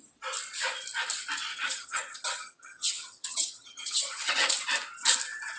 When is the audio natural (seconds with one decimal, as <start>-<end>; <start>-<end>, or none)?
0.0-1.5; 4.5-5.6